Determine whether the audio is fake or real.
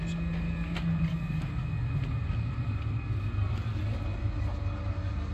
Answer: real